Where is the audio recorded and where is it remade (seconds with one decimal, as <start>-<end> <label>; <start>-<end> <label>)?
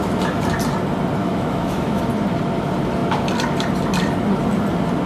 0.0-1.2 recorded; 1.2-2.0 remade; 2.0-5.1 recorded